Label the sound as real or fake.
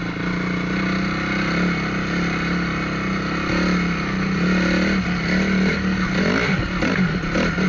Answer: real